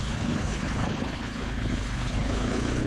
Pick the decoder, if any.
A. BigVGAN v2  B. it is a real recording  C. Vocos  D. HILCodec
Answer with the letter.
D